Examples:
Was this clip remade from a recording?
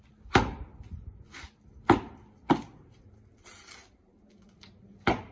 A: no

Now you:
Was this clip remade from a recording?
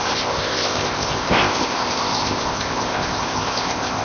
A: yes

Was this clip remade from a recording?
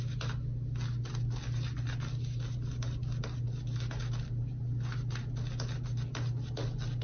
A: no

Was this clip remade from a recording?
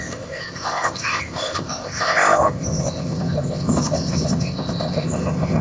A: yes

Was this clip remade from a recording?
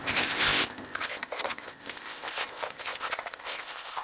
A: yes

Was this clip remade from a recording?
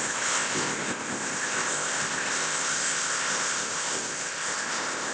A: yes